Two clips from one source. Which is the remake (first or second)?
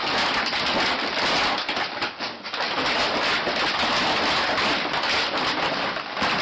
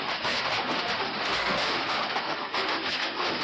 second